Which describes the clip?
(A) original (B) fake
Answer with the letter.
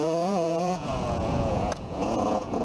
B